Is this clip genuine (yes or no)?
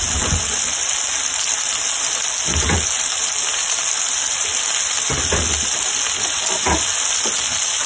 yes